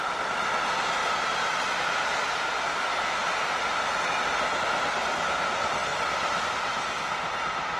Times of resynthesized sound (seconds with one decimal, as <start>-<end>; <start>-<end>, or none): none